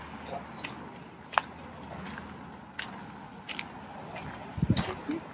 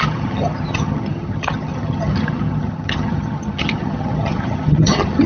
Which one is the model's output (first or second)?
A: second